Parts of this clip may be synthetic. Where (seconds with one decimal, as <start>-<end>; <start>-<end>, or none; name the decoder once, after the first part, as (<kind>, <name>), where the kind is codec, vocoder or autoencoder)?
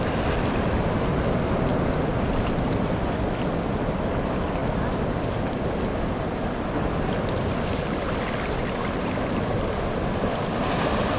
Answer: none